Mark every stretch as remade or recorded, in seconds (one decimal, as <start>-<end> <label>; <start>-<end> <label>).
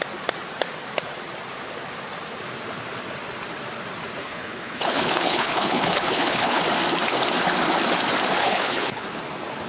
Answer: 0.0-4.2 recorded; 4.2-6.6 remade; 6.6-8.4 recorded; 8.4-9.2 remade; 9.2-9.7 recorded